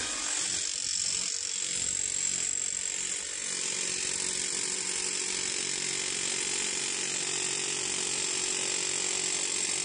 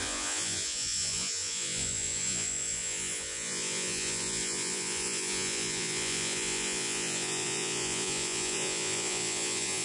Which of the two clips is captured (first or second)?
first